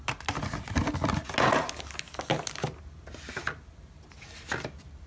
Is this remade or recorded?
recorded